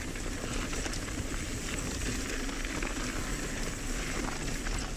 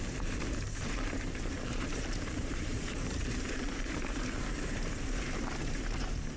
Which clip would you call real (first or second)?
first